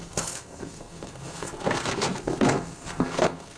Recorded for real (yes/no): no